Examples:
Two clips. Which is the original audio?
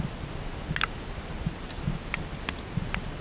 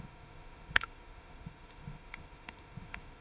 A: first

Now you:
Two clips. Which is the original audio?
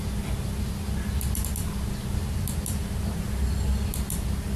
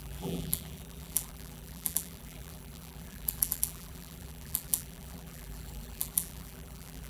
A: first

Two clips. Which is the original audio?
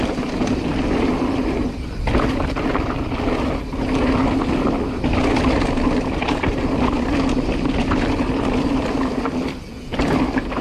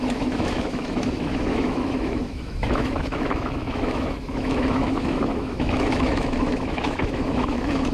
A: first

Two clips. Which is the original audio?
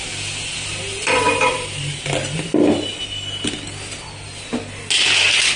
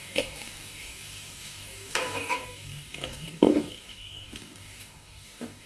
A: first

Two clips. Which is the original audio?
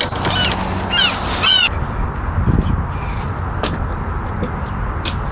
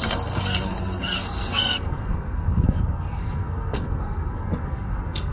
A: first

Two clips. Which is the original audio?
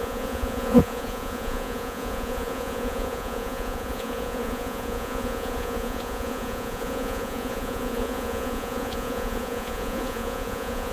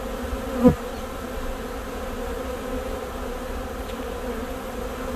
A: second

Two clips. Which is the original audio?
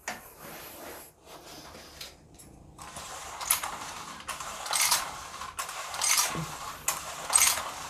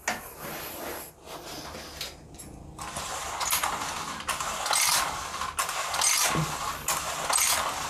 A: second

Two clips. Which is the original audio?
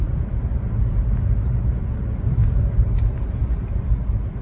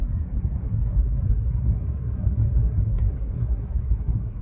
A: first